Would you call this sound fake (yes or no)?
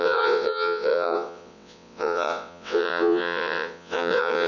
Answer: yes